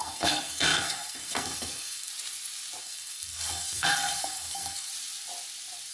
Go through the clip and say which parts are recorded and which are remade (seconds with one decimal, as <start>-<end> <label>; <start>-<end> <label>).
0.0-2.1 remade; 2.1-2.8 recorded; 2.8-4.9 remade; 4.9-5.9 recorded